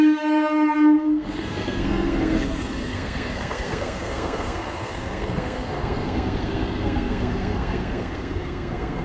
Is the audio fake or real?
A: fake